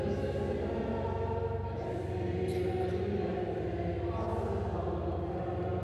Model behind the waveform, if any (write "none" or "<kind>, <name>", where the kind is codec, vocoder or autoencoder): none